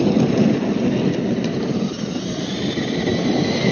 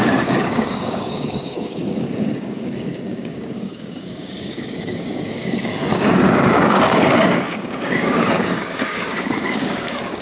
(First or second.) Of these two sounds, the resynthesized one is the second